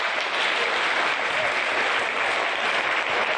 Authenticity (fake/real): real